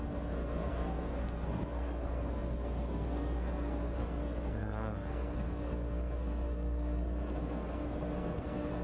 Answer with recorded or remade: remade